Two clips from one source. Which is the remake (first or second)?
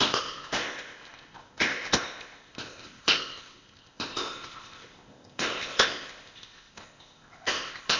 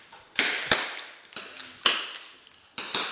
first